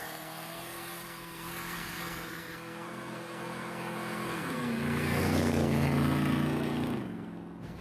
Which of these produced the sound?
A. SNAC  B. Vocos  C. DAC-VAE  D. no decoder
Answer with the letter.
A